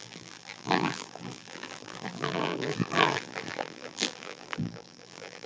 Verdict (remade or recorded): remade